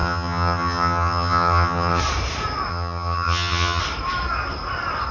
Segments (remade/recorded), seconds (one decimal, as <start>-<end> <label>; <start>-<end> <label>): 0.0-2.0 remade; 2.0-2.7 recorded; 2.7-3.8 remade; 3.8-5.1 recorded